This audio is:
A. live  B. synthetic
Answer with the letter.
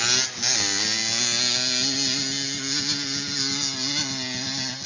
A